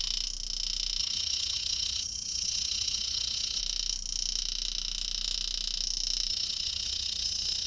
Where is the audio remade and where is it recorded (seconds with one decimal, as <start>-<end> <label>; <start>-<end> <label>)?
0.0-1.0 recorded; 1.0-3.6 remade; 3.6-6.3 recorded; 6.3-7.7 remade